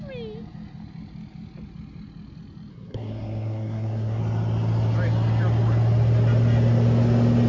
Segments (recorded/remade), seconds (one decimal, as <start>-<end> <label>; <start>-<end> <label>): 0.0-2.7 recorded; 2.7-4.2 remade; 4.2-7.5 recorded